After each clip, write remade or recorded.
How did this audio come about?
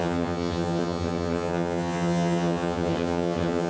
remade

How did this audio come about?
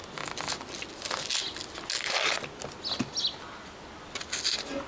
recorded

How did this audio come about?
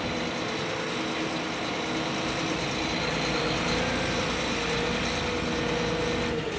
recorded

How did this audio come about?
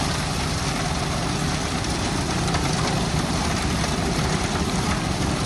remade